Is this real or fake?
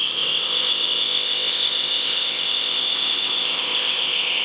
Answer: fake